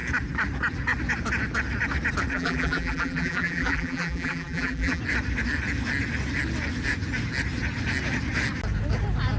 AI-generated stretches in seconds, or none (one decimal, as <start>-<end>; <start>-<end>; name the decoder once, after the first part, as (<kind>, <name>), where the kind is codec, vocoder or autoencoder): 2.3-5.0 (vocoder, BigVGAN v2)